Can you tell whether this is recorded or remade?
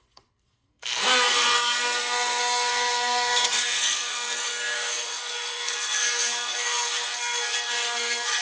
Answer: remade